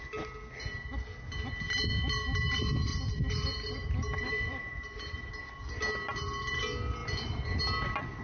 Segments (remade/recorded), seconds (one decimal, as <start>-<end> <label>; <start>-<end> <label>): 0.0-2.9 recorded; 2.9-5.3 remade; 5.3-7.0 recorded; 7.0-7.6 remade; 7.6-8.2 recorded